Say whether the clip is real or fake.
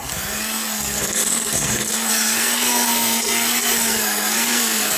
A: fake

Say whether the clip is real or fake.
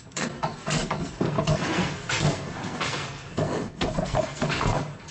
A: fake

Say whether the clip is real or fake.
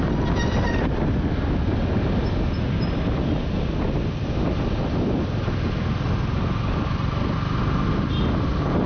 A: real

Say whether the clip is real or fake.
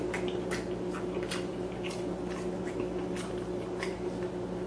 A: real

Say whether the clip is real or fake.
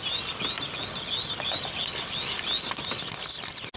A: real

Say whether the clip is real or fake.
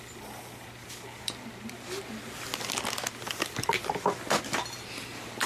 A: real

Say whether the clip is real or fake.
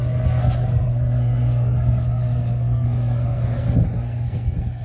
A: fake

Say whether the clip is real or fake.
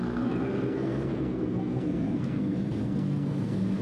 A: fake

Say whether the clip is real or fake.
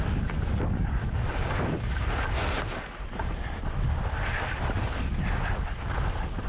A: real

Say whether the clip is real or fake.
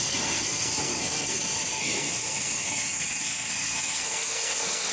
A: fake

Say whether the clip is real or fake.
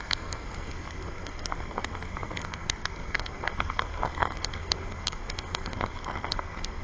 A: fake